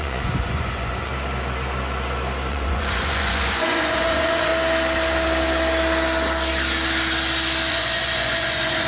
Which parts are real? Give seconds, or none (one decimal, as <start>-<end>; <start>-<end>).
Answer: 1.1-2.5; 4.5-7.7